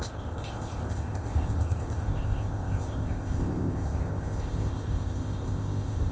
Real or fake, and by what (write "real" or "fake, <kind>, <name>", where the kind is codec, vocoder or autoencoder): fake, codec, ZipCodec